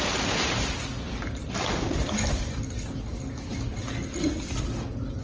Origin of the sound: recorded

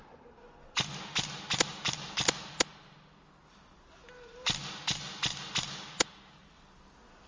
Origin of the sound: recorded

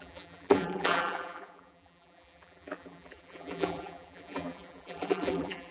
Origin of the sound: remade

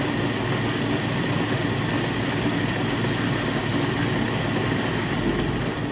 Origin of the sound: recorded